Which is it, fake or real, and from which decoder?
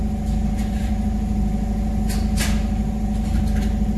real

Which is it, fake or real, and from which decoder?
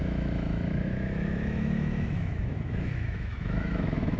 fake, autoencoder, DAC-VAE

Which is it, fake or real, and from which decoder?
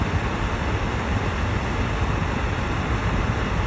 real